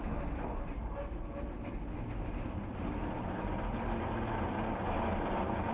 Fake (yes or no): no